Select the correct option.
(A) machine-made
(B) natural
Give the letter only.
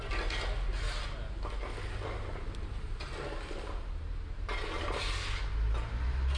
B